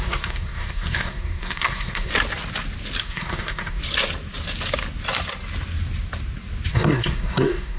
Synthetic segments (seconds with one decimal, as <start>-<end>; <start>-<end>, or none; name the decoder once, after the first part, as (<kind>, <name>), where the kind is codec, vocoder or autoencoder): 0.0-2.1 (codec, SNAC); 3.0-3.8; 6.7-7.8